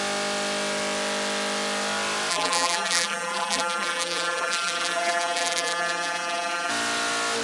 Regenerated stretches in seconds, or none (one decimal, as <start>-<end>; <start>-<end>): 2.3-6.7